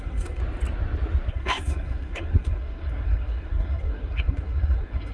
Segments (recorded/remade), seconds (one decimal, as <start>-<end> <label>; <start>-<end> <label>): 0.0-0.4 remade; 0.4-1.3 recorded; 1.3-5.1 remade